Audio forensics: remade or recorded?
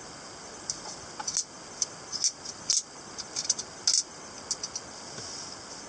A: recorded